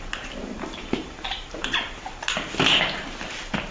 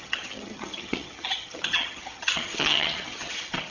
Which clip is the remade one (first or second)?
second